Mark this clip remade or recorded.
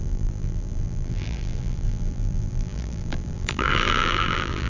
remade